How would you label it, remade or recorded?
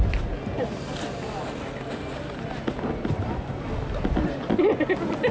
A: recorded